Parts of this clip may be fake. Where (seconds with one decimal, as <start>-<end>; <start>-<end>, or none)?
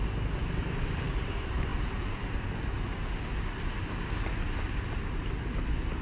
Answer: none